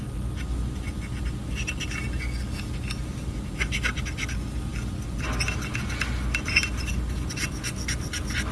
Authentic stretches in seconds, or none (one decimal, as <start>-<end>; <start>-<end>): 0.0-8.5